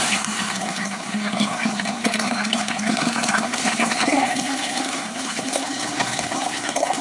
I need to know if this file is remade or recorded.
remade